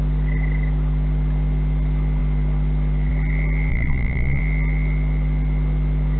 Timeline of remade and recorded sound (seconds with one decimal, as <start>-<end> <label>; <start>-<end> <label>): 0.0-3.7 recorded; 3.7-4.4 remade; 4.4-6.2 recorded

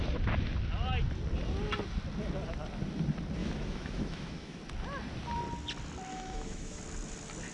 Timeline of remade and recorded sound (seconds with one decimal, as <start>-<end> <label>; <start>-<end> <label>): 0.0-3.4 recorded; 3.4-4.6 remade; 4.6-6.1 recorded; 6.1-6.8 remade; 6.8-7.5 recorded

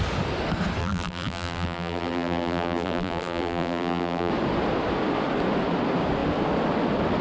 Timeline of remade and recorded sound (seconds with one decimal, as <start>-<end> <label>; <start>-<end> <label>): 0.0-0.8 recorded; 0.8-4.3 remade; 4.3-7.2 recorded

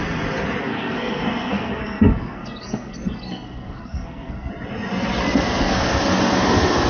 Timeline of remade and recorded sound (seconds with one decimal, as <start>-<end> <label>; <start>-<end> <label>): 0.0-0.6 recorded; 0.6-4.5 remade; 4.5-5.2 recorded; 5.2-6.0 remade; 6.0-6.9 recorded

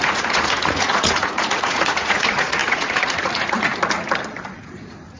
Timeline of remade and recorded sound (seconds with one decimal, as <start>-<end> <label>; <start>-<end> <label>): 0.0-3.7 remade; 3.7-4.5 recorded; 4.5-5.2 remade

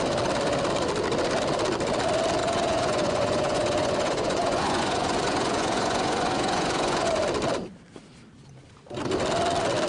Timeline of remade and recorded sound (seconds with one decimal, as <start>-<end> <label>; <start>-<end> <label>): 0.0-2.4 recorded; 2.4-7.2 remade; 7.2-9.9 recorded